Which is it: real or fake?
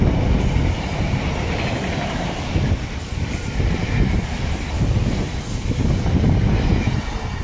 real